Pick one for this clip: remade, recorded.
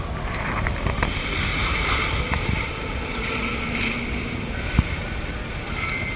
recorded